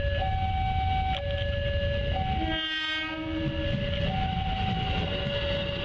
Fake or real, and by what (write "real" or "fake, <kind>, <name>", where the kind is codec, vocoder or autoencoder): real